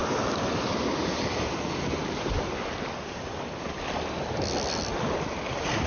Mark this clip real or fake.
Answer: real